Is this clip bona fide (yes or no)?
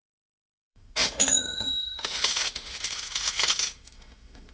no